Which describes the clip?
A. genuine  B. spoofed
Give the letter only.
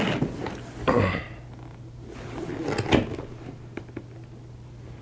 A